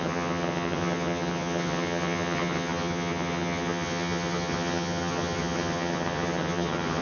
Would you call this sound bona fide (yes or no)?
no